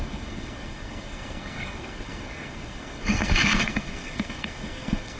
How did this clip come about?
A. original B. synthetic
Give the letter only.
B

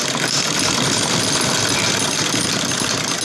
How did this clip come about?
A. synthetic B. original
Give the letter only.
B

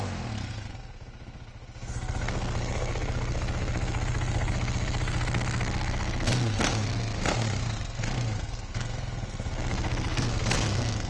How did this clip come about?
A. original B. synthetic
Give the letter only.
B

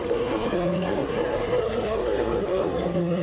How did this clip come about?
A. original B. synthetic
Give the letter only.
B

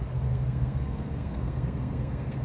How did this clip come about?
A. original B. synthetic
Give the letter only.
B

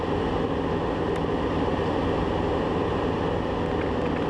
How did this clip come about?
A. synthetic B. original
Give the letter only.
B